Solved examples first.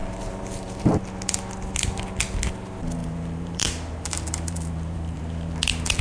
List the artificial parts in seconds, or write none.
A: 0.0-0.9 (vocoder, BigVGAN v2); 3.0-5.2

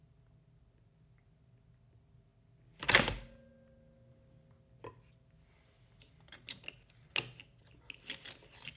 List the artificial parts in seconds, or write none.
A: none

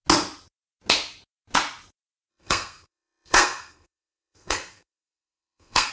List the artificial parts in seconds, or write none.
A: 2.3-5.9 (codec, SNAC)